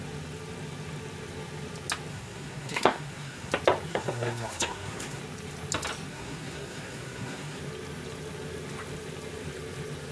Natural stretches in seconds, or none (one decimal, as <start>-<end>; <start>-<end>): 0.0-2.1; 3.5-3.9; 5.2-6.1; 7.6-10.1